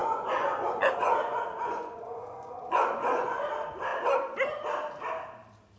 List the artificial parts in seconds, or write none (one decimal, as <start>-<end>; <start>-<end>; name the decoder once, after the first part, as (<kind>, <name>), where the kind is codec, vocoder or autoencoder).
0.0-3.5 (vocoder, Vocos)